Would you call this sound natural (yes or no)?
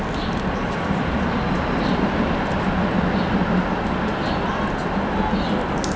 yes